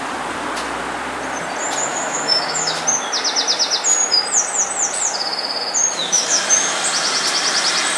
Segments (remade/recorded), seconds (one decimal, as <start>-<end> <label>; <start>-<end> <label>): 0.0-1.9 recorded; 1.9-2.8 remade; 2.8-6.0 recorded; 6.0-6.8 remade; 6.8-8.0 recorded